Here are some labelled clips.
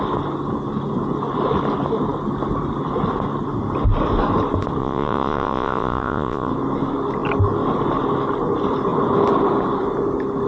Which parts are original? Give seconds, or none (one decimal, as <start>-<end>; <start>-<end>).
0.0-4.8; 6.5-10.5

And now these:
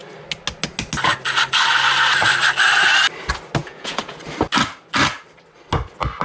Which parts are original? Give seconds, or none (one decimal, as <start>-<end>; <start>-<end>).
0.0-3.6; 4.2-6.2

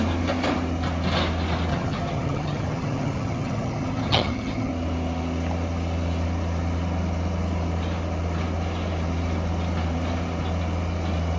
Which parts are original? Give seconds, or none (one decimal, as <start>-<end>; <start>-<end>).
0.0-1.7; 4.7-11.4

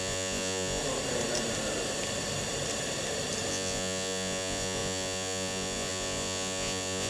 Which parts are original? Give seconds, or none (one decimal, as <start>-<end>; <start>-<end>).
0.8-3.5

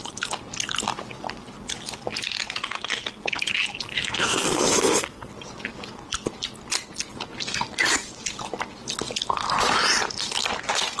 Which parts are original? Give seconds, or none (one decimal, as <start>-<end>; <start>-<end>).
0.0-4.0; 5.3-11.0